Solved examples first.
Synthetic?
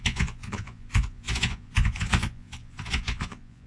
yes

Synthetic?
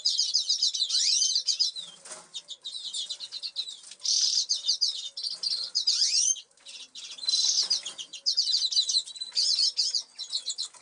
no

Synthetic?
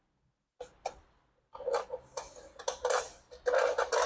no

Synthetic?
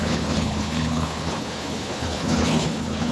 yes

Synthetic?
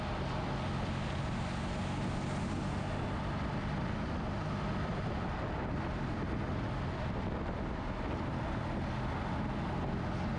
no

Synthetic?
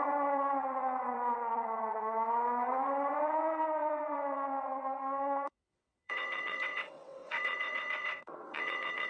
yes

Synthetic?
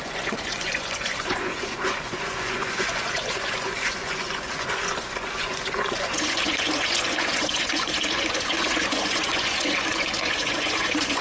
yes